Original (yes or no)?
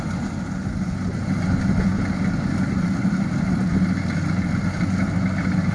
yes